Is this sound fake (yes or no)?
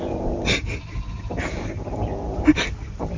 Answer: no